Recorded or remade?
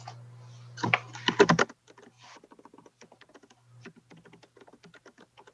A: recorded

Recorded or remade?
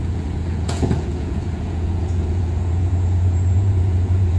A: remade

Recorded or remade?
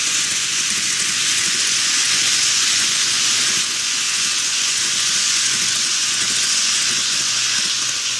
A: remade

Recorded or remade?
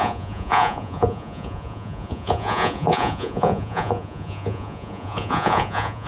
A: remade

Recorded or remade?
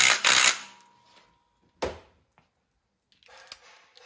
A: recorded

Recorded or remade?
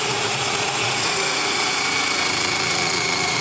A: remade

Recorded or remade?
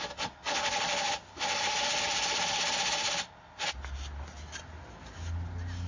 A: recorded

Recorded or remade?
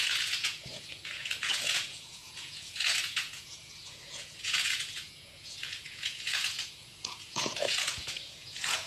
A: remade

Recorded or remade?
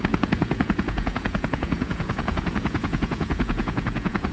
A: remade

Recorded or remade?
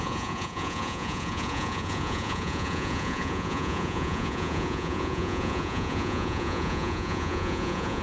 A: remade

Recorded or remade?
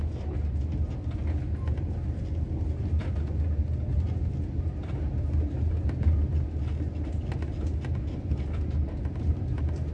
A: recorded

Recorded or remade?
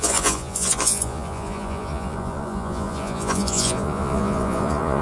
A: remade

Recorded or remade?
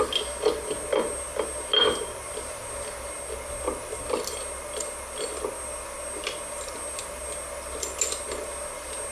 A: recorded